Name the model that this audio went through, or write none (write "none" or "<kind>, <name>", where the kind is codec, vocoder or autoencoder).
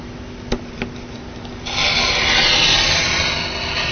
none